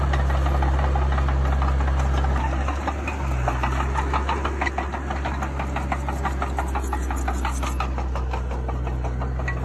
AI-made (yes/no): no